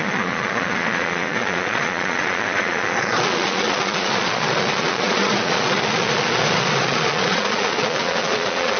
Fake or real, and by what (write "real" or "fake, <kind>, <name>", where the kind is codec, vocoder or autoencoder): fake, vocoder, Vocos